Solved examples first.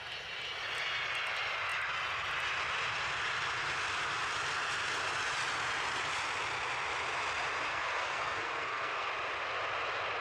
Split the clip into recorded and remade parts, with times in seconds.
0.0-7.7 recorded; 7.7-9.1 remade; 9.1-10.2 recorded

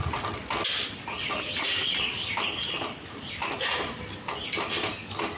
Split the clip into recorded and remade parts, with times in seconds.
0.0-5.4 recorded

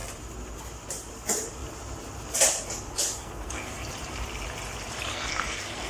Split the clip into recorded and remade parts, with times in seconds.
0.0-3.2 recorded; 3.2-3.9 remade; 3.9-5.1 recorded; 5.1-5.9 remade